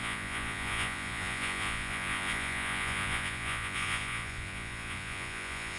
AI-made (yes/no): yes